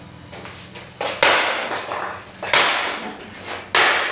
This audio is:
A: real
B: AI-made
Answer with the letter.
A